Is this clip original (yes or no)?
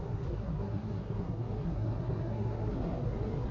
no